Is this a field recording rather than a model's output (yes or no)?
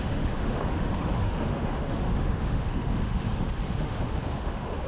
no